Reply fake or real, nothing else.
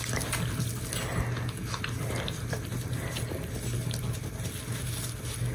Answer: real